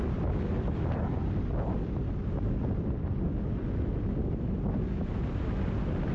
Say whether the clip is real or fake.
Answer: real